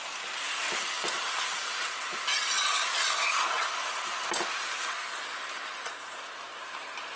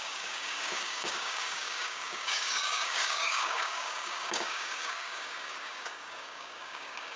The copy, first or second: second